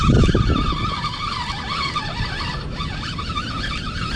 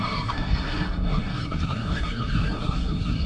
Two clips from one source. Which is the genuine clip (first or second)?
first